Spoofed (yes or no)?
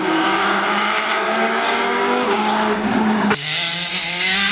yes